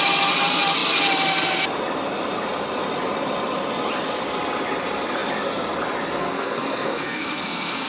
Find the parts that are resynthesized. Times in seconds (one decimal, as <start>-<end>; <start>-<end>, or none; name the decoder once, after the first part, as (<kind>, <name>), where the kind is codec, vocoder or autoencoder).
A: 6.2-7.9 (codec, SNAC)